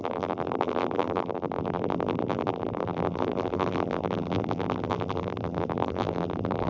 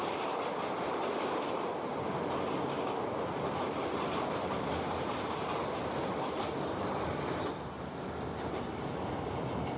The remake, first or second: first